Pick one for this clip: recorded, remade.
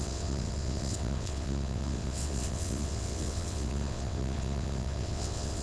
remade